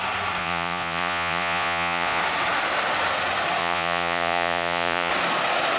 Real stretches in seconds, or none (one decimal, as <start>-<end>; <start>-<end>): 0.0-0.4; 2.2-3.6; 5.1-5.8